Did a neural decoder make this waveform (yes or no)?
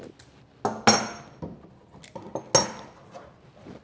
no